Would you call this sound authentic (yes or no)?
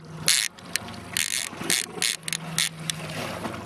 yes